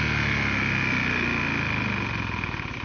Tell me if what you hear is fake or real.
real